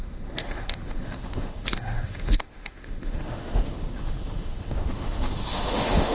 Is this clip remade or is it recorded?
remade